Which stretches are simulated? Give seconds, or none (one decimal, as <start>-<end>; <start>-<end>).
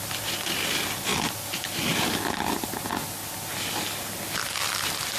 none